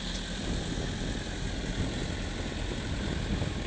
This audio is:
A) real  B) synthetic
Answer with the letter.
A